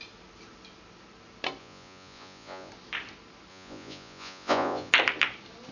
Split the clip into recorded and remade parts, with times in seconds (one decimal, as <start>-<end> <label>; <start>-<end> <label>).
0.0-1.6 recorded; 1.6-2.7 remade; 2.7-3.5 recorded; 3.5-4.9 remade; 4.9-5.7 recorded